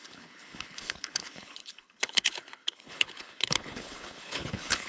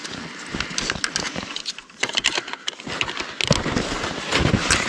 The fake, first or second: first